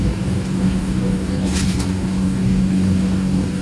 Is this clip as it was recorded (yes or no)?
no